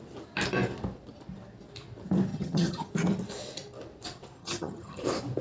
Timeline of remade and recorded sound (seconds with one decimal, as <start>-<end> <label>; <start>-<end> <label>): 0.0-2.3 recorded; 2.3-2.9 remade; 2.9-4.4 recorded; 4.4-5.0 remade; 5.0-5.4 recorded